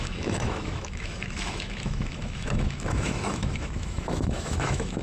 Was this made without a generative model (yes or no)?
no